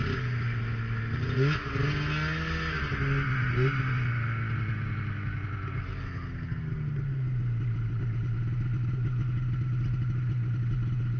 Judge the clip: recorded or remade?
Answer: recorded